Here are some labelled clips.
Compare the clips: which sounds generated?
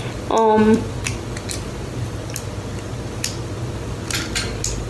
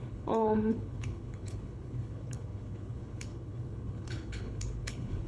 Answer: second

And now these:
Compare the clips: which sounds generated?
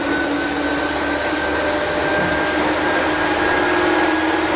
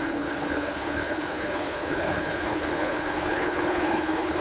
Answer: second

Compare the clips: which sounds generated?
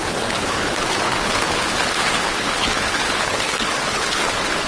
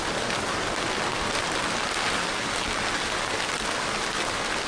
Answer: first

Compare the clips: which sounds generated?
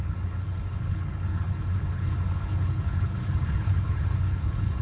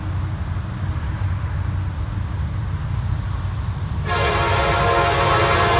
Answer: first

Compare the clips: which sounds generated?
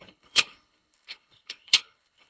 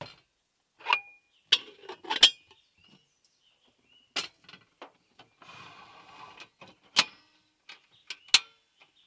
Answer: first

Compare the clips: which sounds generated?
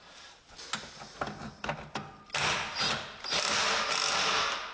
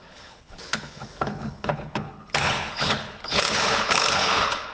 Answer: second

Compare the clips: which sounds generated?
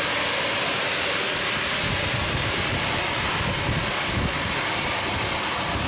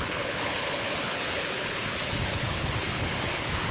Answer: second